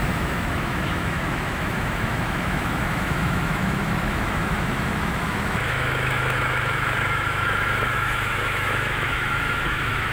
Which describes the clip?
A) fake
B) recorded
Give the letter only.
A